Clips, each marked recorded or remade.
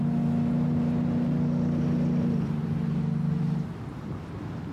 recorded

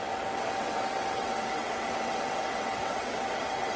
remade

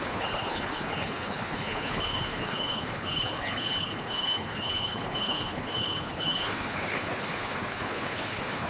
remade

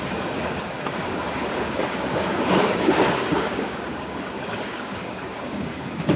remade